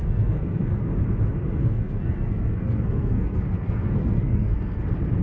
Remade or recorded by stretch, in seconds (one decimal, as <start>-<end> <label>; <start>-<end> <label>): 0.0-0.7 remade; 0.7-1.7 recorded; 1.7-4.8 remade; 4.8-5.2 recorded